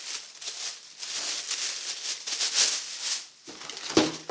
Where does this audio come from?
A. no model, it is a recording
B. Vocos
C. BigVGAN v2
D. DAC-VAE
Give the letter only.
A